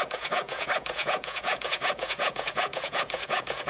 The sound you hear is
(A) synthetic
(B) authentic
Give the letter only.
A